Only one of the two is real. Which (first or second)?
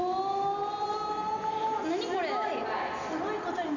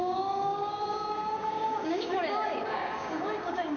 first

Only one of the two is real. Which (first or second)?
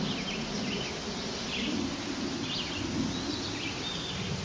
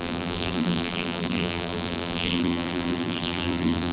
first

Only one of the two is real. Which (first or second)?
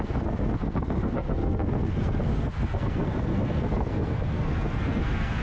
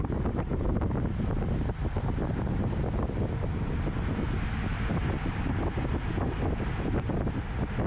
second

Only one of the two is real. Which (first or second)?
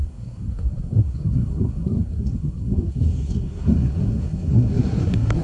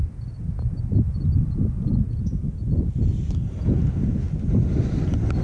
second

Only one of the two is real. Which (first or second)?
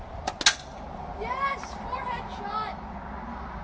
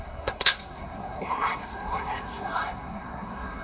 first